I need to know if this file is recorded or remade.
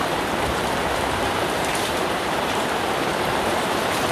remade